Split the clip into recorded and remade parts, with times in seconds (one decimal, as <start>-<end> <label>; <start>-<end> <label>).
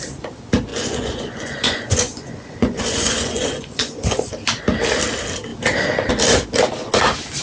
0.0-0.7 recorded; 0.7-4.3 remade; 4.3-7.4 recorded